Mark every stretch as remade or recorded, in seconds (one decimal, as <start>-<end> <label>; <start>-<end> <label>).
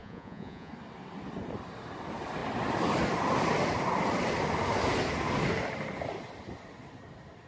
0.0-0.7 remade; 0.7-7.5 recorded